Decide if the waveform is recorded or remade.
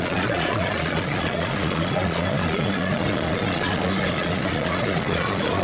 remade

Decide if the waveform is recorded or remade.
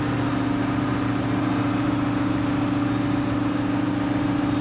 recorded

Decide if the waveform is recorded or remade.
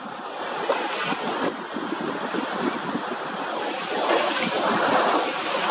recorded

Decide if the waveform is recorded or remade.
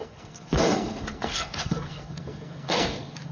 remade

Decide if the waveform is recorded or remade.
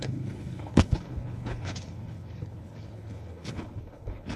remade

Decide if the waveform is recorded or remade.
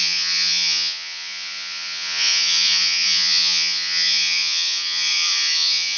remade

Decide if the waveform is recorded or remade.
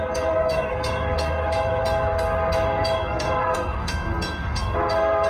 remade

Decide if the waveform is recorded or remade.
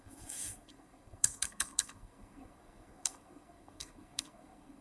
remade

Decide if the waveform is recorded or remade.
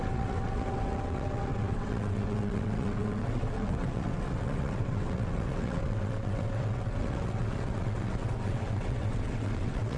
remade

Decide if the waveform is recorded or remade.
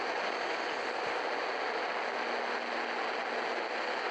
recorded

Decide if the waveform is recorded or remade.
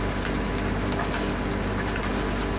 recorded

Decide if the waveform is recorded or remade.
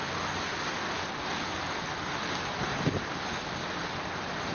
recorded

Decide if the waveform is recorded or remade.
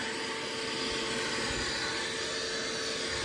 recorded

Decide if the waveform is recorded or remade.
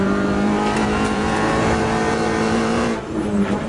remade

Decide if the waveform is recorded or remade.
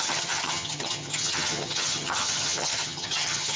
remade